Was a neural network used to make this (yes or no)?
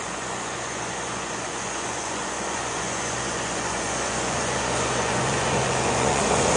yes